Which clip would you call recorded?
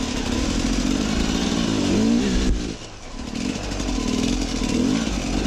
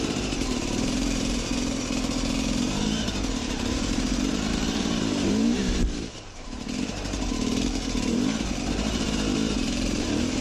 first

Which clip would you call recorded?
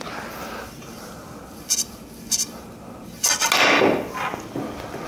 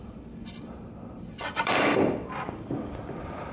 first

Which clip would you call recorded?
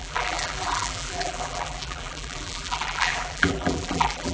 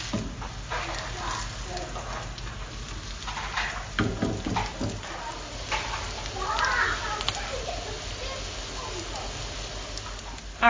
second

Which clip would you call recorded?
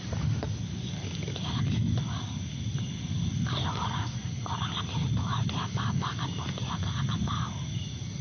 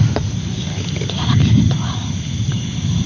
first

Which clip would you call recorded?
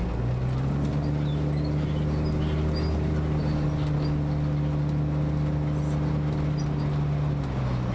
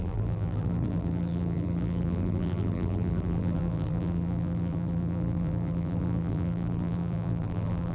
first